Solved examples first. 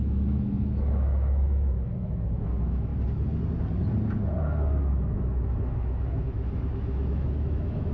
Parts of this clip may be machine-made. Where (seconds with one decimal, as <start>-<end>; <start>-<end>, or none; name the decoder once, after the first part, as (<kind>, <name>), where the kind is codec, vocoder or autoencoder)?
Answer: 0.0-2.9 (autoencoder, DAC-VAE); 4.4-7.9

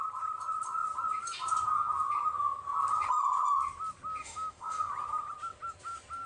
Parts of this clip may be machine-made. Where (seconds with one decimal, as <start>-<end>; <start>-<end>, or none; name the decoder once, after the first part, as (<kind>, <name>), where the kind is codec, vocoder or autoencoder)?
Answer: 4.2-4.9 (autoencoder, DAC-VAE)

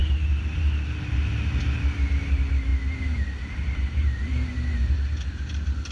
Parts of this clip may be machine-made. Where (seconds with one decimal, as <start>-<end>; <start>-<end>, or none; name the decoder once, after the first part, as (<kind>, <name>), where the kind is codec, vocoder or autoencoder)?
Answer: none

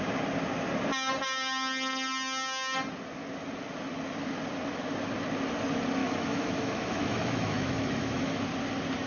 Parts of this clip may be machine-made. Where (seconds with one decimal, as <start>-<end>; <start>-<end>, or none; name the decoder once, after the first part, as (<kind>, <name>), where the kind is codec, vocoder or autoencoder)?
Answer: 6.0-8.4 (autoencoder, DAC-VAE)

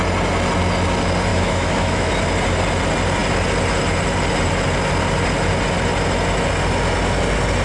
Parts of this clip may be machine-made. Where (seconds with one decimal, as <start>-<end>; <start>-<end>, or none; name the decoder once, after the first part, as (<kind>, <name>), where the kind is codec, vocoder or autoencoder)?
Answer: 1.3-2.1 (autoencoder, DAC-VAE)

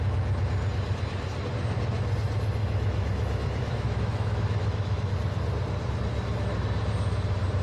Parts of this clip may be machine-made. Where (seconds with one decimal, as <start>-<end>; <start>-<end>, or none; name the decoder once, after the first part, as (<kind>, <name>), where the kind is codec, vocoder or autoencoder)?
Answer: 2.6-5.1 (autoencoder, DAC-VAE)

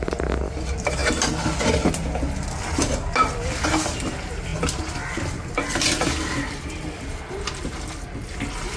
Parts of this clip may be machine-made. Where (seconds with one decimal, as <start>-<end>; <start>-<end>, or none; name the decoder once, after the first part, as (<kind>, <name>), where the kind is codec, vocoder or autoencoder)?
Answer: none